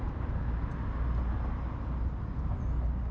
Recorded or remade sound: recorded